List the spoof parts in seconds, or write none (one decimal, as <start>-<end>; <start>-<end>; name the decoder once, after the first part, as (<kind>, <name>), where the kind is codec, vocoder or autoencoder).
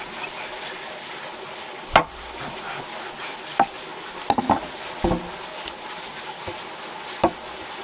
none